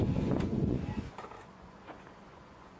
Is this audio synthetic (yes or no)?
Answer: yes